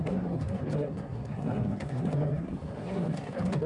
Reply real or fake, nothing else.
fake